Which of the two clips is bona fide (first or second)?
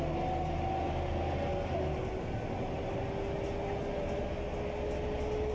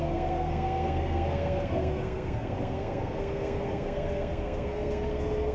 first